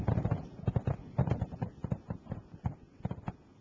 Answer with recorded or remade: recorded